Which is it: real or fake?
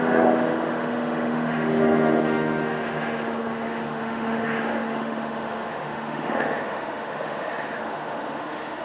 fake